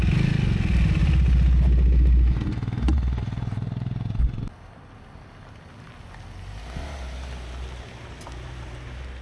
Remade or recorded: recorded